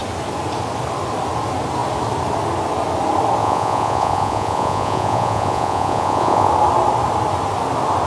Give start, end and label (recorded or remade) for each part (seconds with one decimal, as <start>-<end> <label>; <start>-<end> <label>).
0.0-3.4 recorded; 3.4-6.5 remade; 6.5-8.1 recorded